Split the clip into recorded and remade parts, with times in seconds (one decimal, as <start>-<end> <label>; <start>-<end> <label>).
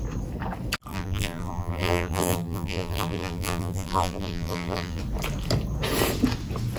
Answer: 0.0-0.9 recorded; 0.9-5.0 remade; 5.0-6.8 recorded